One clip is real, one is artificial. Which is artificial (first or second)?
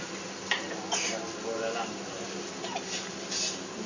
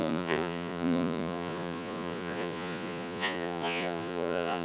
second